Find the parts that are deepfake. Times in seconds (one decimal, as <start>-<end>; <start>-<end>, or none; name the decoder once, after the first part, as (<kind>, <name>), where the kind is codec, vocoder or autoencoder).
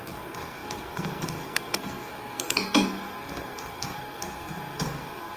0.0-5.4 (codec, SNAC)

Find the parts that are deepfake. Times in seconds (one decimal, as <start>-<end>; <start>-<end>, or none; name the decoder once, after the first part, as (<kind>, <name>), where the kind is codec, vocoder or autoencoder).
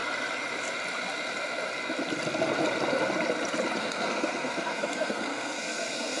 3.8-6.2 (codec, SNAC)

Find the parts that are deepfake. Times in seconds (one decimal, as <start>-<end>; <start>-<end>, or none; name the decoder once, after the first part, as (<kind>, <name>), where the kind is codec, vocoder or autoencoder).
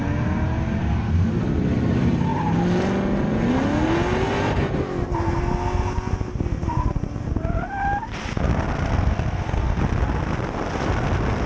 0.8-1.4 (codec, SNAC); 8.9-9.8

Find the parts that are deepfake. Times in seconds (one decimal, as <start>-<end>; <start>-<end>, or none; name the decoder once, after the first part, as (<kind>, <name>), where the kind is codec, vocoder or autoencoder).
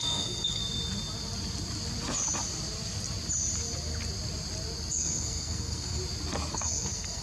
0.0-0.6 (codec, SNAC); 4.9-6.0; 6.5-7.2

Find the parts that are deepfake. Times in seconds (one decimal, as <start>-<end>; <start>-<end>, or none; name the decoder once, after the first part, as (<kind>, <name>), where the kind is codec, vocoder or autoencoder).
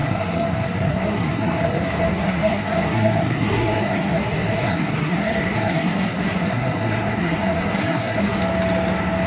0.0-8.4 (codec, SNAC)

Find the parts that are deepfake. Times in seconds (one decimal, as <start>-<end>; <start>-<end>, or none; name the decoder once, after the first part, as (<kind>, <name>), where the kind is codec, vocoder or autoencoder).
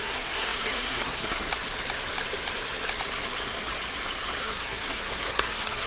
0.0-1.5 (codec, SNAC); 4.4-5.9